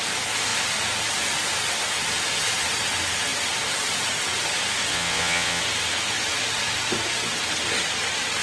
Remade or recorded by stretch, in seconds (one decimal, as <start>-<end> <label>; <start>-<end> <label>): 0.0-4.9 recorded; 4.9-5.6 remade; 5.6-8.4 recorded